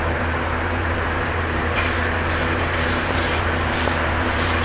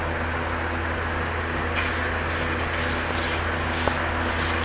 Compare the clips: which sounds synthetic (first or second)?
first